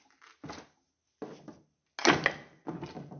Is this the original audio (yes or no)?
yes